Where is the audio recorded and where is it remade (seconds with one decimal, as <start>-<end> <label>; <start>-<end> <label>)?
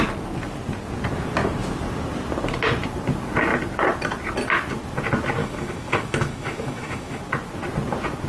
0.0-5.4 recorded; 5.4-7.2 remade; 7.2-8.3 recorded